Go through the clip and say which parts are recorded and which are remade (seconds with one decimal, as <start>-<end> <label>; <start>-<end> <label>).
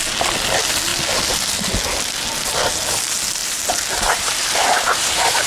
0.0-3.4 recorded; 3.4-5.5 remade